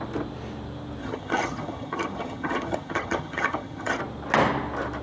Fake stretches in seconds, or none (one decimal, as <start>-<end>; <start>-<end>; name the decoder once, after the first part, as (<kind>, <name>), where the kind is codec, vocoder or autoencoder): 1.0-4.0 (vocoder, HiFi-GAN)